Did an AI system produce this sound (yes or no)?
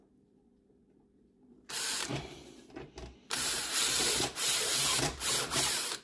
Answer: yes